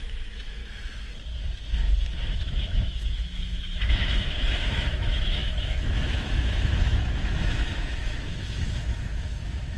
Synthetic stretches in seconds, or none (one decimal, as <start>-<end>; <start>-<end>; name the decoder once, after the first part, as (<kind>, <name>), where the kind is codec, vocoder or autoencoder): 0.0-0.6 (autoencoder, DAC-VAE); 2.2-9.8